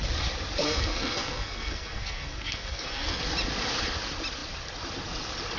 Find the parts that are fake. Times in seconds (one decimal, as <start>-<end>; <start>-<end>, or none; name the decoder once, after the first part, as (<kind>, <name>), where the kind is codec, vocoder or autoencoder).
0.6-3.2 (codec, SNAC)